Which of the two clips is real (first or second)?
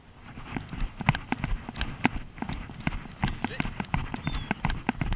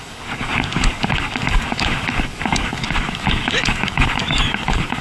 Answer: first